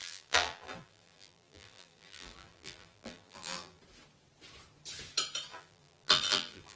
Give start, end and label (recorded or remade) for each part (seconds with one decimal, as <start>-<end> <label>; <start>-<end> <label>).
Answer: 0.0-3.8 remade; 3.8-5.5 recorded; 5.5-6.8 remade